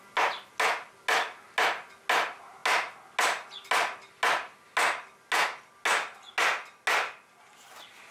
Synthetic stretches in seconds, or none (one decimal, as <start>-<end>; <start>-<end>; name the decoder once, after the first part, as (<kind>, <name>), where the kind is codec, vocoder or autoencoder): none